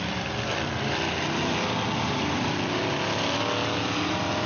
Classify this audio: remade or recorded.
recorded